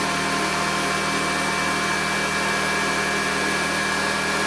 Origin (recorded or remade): recorded